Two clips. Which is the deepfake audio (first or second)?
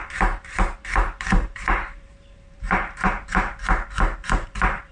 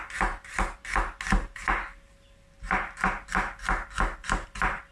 first